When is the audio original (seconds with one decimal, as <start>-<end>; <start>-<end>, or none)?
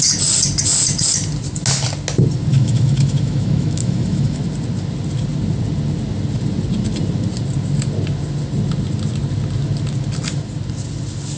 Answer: 0.0-2.5; 4.4-11.4